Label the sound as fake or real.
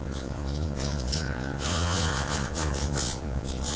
fake